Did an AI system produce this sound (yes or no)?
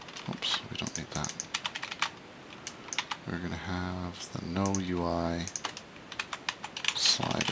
no